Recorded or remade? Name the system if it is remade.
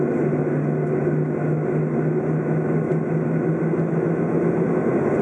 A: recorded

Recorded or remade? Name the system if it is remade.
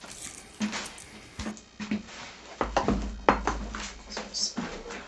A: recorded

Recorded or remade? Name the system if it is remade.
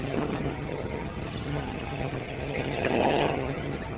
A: remade, vocoder, HiFi-GAN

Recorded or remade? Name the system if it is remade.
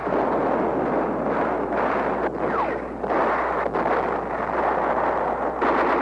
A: recorded